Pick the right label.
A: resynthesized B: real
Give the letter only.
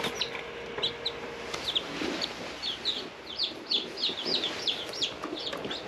B